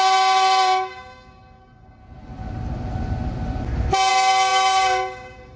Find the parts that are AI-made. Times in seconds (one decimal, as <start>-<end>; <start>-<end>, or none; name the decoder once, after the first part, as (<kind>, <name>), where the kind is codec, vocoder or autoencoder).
0.0-2.0 (codec, DAC); 4.1-5.6